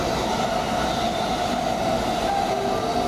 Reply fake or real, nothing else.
real